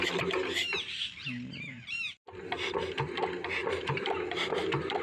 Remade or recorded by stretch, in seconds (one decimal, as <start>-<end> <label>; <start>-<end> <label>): 0.0-1.5 recorded; 1.5-2.2 remade; 2.2-3.6 recorded; 3.6-4.1 remade; 4.1-5.0 recorded